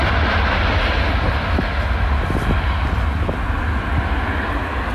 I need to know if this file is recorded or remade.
recorded